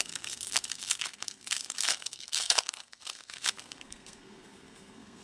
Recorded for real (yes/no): no